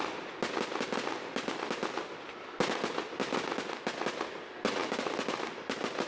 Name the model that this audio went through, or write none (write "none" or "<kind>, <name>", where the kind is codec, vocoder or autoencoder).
none